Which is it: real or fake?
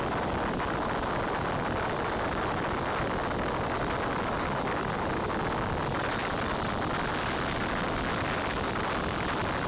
real